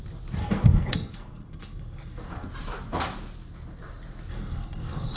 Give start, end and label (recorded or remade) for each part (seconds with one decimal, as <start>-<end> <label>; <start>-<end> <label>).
0.0-0.4 recorded; 0.4-2.5 remade; 2.5-4.3 recorded; 4.3-5.2 remade